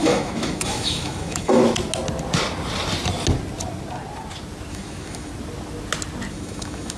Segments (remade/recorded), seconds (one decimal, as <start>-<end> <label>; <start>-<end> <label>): 0.0-1.6 remade; 1.6-4.7 recorded; 4.7-5.3 remade; 5.3-6.3 recorded; 6.3-7.0 remade